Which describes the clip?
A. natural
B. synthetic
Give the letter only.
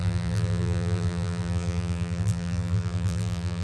B